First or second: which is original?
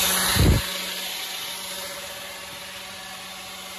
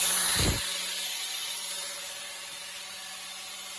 first